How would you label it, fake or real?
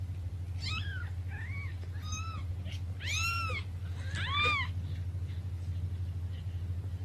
real